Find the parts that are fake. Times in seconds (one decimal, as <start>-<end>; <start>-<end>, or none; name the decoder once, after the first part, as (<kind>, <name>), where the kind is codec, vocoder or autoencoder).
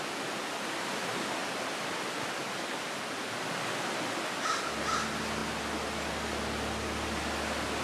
none